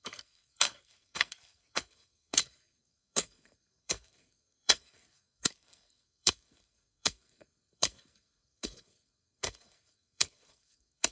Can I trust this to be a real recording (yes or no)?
no